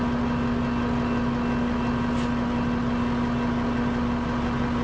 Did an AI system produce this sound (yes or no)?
no